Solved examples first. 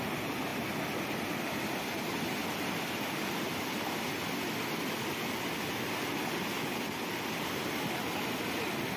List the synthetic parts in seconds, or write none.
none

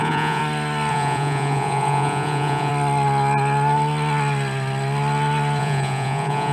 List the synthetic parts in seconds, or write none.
0.0-0.4 (vocoder, Vocos); 0.9-2.7; 5.6-6.5

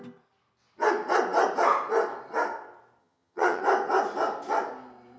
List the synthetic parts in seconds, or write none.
3.0-3.6 (vocoder, HiFi-GAN)